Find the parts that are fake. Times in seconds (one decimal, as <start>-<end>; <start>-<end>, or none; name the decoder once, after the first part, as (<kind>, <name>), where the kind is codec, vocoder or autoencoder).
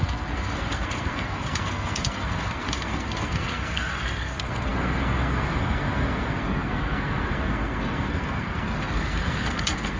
0.0-10.0 (codec, SNAC)